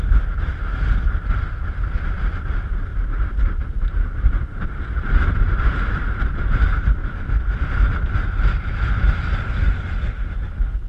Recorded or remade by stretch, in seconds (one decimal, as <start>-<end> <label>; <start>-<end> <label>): 0.0-2.9 recorded; 2.9-6.2 remade; 6.2-7.0 recorded; 7.0-9.8 remade; 9.8-10.9 recorded